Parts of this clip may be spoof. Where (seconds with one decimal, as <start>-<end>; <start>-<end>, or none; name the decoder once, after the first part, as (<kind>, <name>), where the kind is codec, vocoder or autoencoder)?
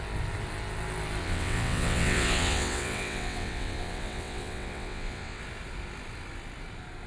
1.2-5.4 (vocoder, WaveNeXt)